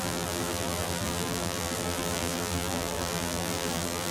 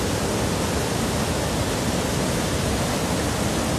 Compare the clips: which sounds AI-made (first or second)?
first